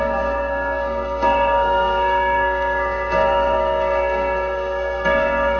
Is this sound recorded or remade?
remade